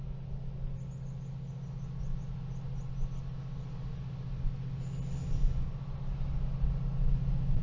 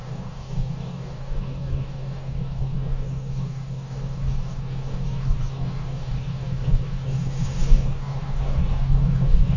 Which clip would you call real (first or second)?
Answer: first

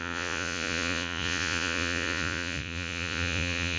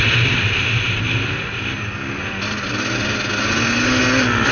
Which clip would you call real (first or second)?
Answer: second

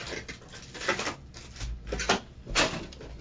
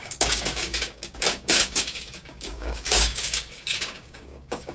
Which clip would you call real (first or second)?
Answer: first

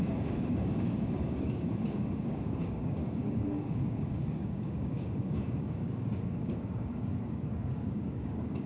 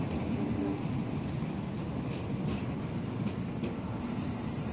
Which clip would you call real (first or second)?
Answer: second